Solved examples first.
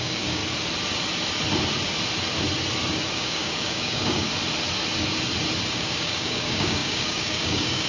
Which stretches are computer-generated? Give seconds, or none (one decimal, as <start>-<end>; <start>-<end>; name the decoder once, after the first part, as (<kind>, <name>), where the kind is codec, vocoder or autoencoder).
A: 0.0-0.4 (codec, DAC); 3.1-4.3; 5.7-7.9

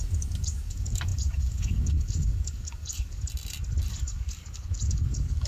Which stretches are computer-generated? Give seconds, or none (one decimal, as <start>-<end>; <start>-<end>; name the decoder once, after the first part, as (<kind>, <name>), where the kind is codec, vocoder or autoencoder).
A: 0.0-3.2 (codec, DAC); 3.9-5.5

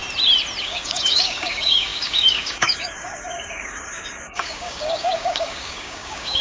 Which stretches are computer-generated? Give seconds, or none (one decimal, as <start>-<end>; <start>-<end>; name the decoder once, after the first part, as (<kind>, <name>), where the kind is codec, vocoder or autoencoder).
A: 0.6-6.4 (codec, DAC)

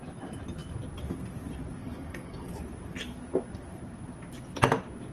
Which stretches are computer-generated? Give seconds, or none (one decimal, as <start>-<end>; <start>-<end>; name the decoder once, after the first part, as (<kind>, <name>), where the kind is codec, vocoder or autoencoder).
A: 1.8-2.5 (codec, DAC)